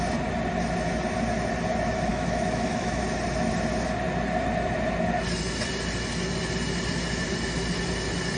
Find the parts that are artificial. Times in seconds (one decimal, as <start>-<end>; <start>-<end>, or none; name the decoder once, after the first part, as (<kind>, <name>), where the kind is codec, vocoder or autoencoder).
2.1-3.0 (autoencoder, DAC-VAE)